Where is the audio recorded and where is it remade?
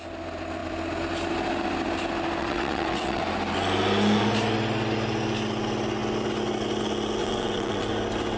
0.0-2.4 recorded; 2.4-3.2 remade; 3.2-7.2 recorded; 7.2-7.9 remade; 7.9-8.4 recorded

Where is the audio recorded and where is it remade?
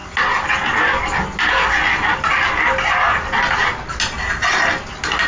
0.0-5.3 recorded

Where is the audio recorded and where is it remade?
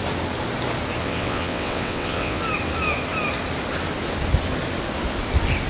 0.0-1.0 recorded; 1.0-2.4 remade; 2.4-5.7 recorded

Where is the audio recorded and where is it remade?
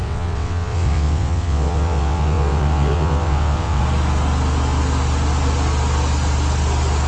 0.0-3.8 remade; 3.8-7.1 recorded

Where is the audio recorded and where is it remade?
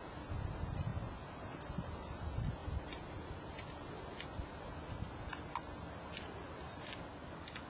0.0-7.7 recorded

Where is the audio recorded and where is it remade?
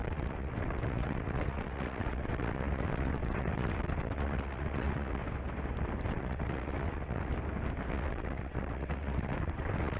0.0-5.2 remade; 5.2-6.1 recorded; 6.1-7.3 remade; 7.3-7.9 recorded; 7.9-10.0 remade